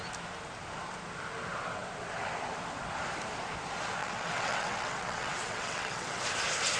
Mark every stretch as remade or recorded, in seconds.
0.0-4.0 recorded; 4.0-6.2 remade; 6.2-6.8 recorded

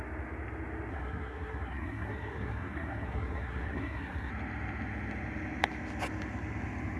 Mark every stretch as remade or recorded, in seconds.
0.0-0.9 recorded; 0.9-4.3 remade; 4.3-7.0 recorded

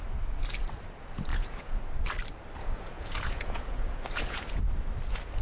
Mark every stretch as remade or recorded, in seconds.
0.0-1.3 recorded; 1.3-1.8 remade; 1.8-2.6 recorded; 2.6-4.6 remade; 4.6-5.4 recorded

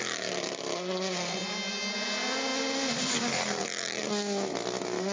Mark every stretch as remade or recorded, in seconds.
0.0-5.1 recorded

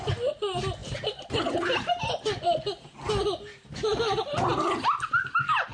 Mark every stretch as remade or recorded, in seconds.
0.0-5.7 recorded